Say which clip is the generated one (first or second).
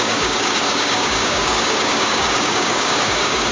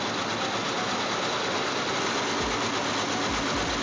first